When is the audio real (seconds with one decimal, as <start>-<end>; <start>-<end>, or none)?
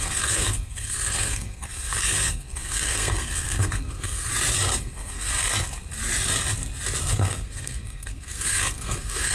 4.3-4.8; 5.3-7.1